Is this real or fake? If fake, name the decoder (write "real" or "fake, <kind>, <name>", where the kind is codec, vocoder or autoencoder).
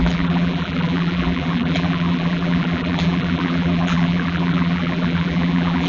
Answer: fake, vocoder, BigVGAN v2